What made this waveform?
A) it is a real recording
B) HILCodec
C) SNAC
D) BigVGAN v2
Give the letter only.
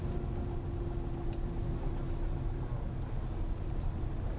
A